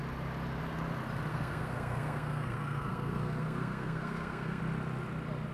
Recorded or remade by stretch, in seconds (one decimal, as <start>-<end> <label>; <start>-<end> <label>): 0.0-1.3 recorded; 1.3-4.6 remade; 4.6-5.5 recorded